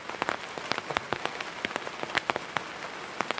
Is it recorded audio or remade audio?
recorded